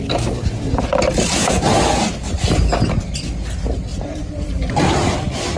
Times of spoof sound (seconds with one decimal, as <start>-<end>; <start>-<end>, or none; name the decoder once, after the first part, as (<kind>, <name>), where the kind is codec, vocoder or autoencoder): 3.9-4.8 (vocoder, BigVGAN v2)